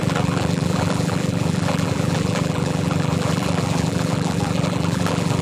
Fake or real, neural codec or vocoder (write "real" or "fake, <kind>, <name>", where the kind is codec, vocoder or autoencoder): fake, vocoder, BigVGAN v2